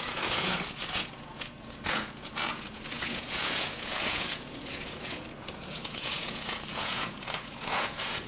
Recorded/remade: remade